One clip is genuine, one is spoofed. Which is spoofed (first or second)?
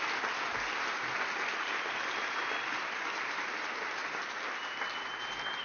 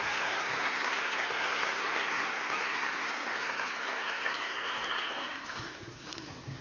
second